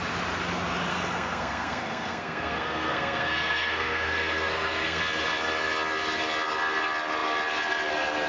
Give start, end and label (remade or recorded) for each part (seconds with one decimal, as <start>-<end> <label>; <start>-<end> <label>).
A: 0.0-0.9 recorded; 0.9-5.0 remade; 5.0-8.3 recorded